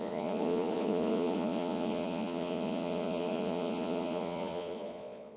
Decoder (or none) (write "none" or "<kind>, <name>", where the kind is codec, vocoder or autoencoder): vocoder, Vocos